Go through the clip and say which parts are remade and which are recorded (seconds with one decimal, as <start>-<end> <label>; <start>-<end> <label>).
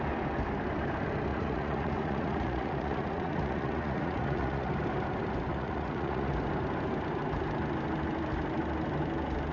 0.0-1.3 recorded; 1.3-4.7 remade; 4.7-5.5 recorded; 5.5-6.3 remade; 6.3-9.5 recorded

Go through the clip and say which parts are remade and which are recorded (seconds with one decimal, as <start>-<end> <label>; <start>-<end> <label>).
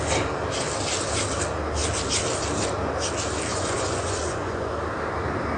0.0-3.5 recorded; 3.5-4.7 remade; 4.7-5.6 recorded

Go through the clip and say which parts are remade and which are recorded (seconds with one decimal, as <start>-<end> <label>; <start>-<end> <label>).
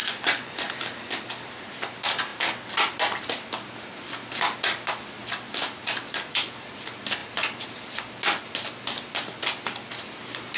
0.0-0.7 remade; 0.7-10.6 recorded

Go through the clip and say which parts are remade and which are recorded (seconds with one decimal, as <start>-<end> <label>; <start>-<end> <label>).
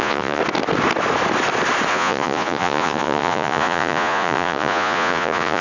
0.0-0.4 remade; 0.4-1.9 recorded; 1.9-5.6 remade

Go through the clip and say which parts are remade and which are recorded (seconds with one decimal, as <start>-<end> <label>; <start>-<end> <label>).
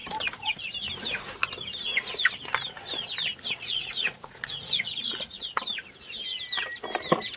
0.0-3.6 recorded; 3.6-5.5 remade; 5.5-7.4 recorded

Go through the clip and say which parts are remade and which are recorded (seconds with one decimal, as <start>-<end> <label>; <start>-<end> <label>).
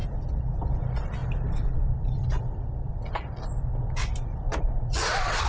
0.0-5.5 recorded